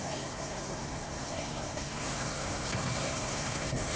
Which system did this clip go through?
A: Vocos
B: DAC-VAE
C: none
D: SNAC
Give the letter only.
D